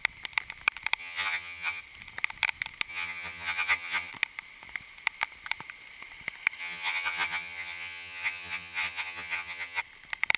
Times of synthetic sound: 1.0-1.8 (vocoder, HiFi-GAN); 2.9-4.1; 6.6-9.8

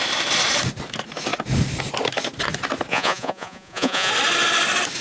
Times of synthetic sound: 2.9-4.1 (vocoder, Vocos)

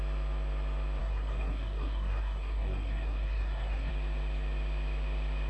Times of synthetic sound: 1.0-3.9 (codec, SNAC)

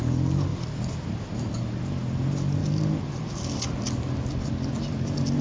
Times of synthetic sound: none

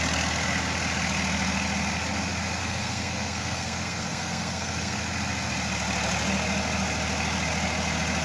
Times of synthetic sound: 2.6-5.0 (codec, SNAC)

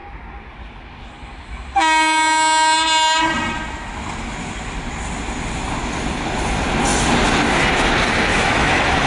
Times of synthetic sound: 8.3-9.1 (autoencoder, DAC-VAE)

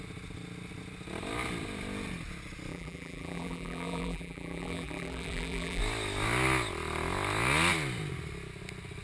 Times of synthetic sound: 2.7-5.8 (vocoder, BigVGAN v2)

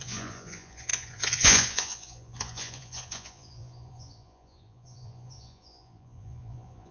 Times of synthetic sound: 0.0-6.9 (vocoder, Vocos)